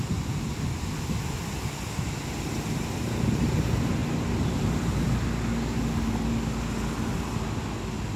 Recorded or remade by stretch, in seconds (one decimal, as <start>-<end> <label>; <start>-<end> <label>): 0.0-8.2 recorded